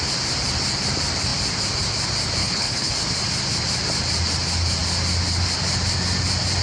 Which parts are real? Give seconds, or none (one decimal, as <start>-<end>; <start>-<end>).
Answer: 0.0-2.4; 2.9-6.6